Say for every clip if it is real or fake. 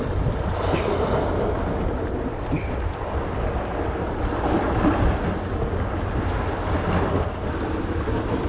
real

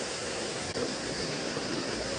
fake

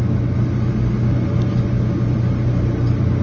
real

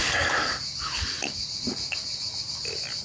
real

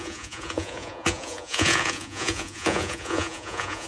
fake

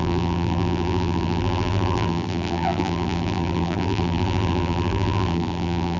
fake